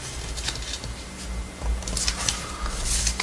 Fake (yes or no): no